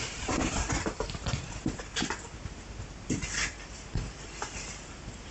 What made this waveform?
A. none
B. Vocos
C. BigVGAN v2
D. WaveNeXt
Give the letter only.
A